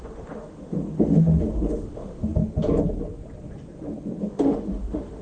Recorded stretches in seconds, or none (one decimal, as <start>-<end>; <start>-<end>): 2.4-4.2